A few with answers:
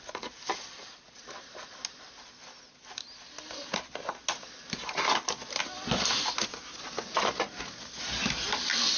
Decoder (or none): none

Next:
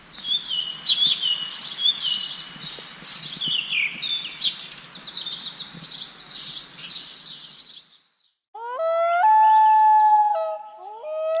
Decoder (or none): none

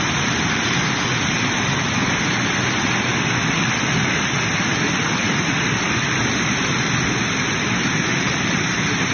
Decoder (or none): none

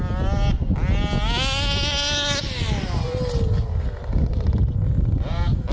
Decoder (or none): none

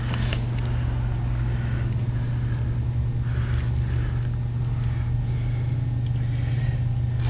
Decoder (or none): none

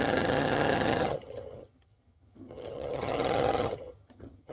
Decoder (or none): vocoder, HiFi-GAN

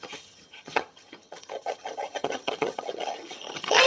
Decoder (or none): vocoder, HiFi-GAN